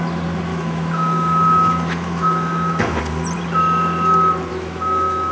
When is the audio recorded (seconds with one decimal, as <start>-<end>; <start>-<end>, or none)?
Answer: 0.0-0.5; 3.0-4.5